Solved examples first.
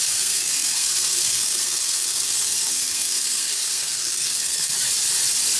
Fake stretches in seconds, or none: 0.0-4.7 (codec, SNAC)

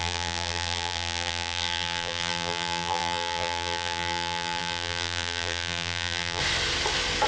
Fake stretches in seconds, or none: 0.0-6.4 (vocoder, BigVGAN v2)

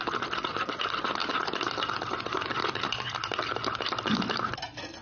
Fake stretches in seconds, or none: none

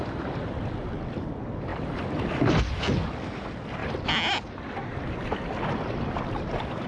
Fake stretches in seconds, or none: none